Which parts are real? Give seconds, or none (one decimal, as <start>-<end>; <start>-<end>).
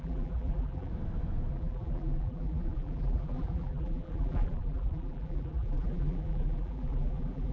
0.9-1.5